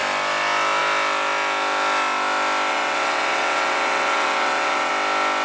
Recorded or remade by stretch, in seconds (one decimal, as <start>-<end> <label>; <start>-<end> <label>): 0.0-2.7 recorded; 2.7-4.9 remade; 4.9-5.4 recorded

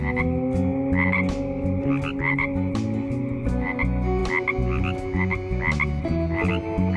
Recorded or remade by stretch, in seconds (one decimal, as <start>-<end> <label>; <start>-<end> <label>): 0.0-7.0 recorded

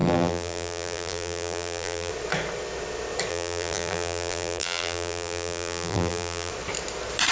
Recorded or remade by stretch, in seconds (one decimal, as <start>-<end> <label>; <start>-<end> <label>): 0.0-2.1 remade; 2.1-3.3 recorded; 3.3-6.5 remade; 6.5-7.3 recorded

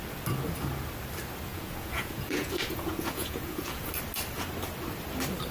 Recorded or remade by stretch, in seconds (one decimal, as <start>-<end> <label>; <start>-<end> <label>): 0.0-1.5 recorded; 1.5-3.9 remade; 3.9-5.5 recorded